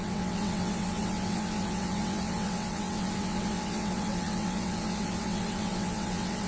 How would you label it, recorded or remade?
remade